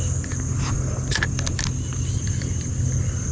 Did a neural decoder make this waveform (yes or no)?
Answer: no